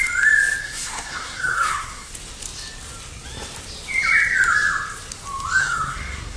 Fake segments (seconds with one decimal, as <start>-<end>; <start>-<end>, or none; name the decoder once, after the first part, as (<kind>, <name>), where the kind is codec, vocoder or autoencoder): 0.6-2.1 (codec, SNAC); 5.6-6.4